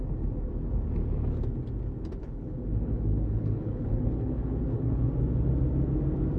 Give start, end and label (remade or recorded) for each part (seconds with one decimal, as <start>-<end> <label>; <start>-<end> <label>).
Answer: 0.0-2.2 recorded; 2.2-5.1 remade; 5.1-6.4 recorded